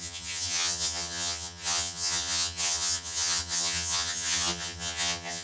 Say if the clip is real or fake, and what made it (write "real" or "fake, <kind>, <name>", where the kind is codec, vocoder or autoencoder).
fake, vocoder, HiFi-GAN